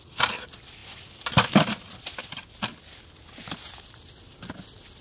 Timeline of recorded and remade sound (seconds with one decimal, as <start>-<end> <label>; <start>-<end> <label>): 0.0-5.0 recorded